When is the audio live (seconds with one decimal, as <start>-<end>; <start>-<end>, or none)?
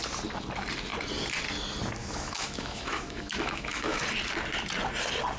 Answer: 0.0-2.0; 4.0-5.4